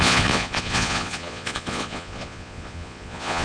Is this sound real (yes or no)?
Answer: no